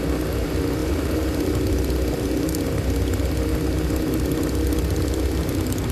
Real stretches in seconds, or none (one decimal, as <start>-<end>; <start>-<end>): 0.0-0.8; 1.5-5.9